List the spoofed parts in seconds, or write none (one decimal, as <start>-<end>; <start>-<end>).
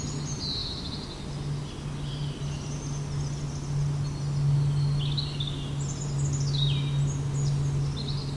none